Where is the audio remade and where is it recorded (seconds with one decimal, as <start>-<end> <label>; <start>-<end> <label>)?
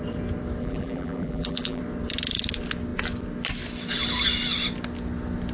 0.0-0.6 recorded; 0.6-1.8 remade; 1.8-5.5 recorded